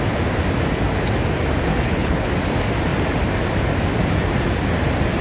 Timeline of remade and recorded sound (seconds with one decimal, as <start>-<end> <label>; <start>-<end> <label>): 0.0-1.7 recorded; 1.7-2.3 remade; 2.3-5.2 recorded

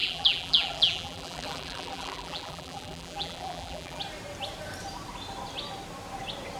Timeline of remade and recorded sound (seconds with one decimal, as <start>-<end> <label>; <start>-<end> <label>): 0.0-4.0 remade; 4.0-6.6 recorded

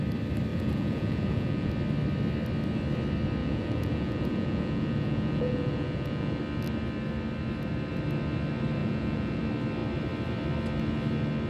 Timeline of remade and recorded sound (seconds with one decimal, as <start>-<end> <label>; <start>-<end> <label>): 0.0-0.5 recorded; 0.5-1.7 remade; 1.7-3.4 recorded; 3.4-6.4 remade; 6.4-8.8 recorded; 8.8-9.4 remade; 9.4-11.5 recorded